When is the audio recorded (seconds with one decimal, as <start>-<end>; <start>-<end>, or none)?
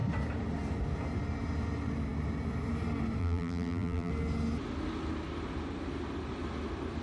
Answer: 0.0-3.2; 4.1-7.0